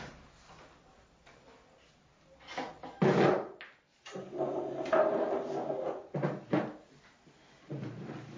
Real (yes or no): yes